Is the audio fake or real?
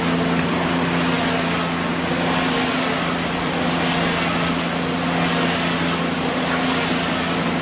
real